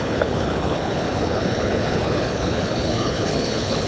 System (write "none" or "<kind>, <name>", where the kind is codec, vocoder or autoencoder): codec, HILCodec